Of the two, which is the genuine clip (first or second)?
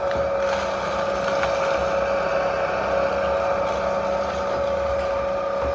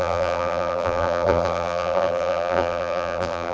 first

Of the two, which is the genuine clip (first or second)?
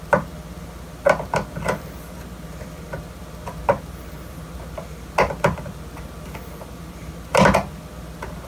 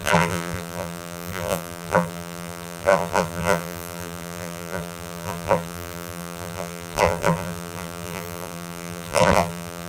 first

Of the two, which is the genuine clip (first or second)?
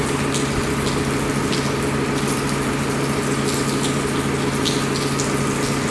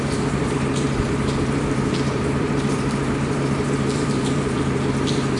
first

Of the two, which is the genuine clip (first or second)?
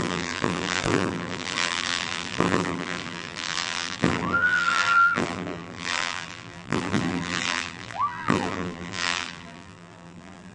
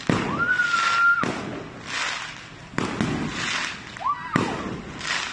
second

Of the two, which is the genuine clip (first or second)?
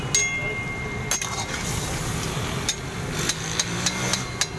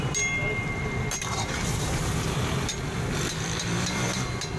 first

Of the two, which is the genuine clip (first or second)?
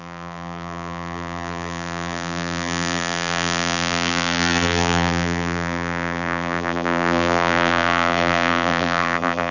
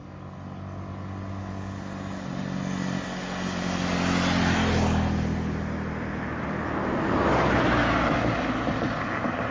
second